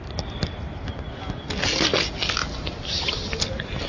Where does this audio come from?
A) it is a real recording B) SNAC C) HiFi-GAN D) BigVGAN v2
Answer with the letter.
A